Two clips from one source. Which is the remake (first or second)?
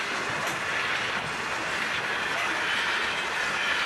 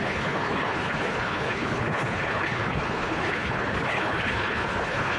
second